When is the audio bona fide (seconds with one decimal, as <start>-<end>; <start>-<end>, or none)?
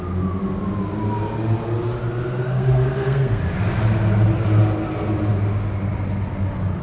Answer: 0.0-2.4; 3.4-6.8